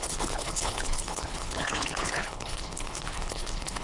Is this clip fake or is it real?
fake